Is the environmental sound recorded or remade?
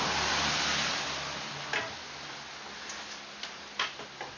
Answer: recorded